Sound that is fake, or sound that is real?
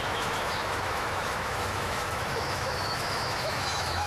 fake